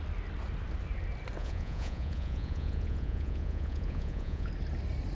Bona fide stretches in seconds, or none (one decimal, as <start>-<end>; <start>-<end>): 0.0-1.4; 4.5-5.1